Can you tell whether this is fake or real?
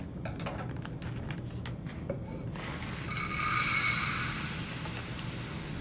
real